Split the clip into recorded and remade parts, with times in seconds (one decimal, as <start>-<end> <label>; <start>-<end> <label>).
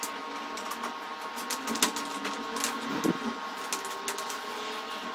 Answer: 0.0-5.1 recorded